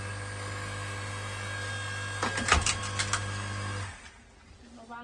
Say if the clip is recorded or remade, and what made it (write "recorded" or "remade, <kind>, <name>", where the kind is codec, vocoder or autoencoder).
recorded